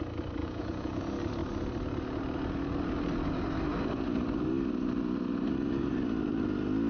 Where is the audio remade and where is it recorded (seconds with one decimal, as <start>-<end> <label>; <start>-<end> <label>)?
0.0-0.4 recorded; 0.4-1.0 remade; 1.0-6.9 recorded